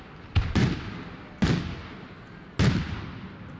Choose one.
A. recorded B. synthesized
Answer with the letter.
A